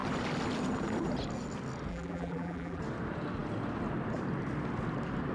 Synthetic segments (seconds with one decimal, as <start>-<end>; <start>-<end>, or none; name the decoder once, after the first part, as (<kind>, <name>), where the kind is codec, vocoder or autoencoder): 1.9-2.8 (vocoder, BigVGAN v2)